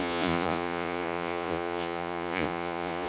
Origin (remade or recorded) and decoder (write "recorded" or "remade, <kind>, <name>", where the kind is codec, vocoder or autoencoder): remade, vocoder, Vocos